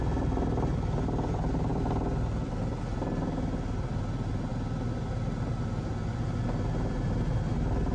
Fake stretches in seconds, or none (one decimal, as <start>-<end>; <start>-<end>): 1.7-2.8